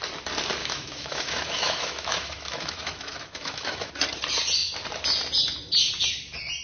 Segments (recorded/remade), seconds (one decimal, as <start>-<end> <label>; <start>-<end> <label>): 0.0-0.6 recorded; 0.6-3.9 remade; 3.9-6.6 recorded